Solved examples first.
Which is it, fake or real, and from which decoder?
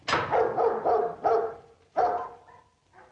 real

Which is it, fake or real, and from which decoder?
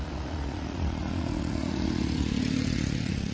fake, vocoder, Vocos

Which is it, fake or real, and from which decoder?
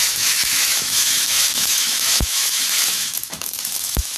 fake, autoencoder, DAC-VAE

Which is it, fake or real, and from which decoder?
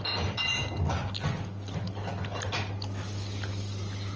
real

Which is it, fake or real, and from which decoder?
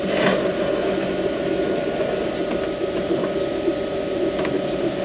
real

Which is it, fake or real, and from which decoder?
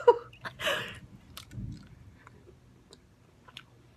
real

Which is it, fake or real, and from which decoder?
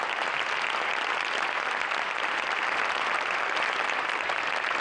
fake, vocoder, BigVGAN v2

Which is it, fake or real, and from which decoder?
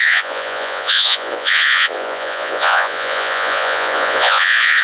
fake, vocoder, Vocos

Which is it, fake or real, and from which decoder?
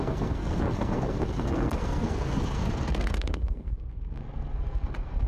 fake, codec, SNAC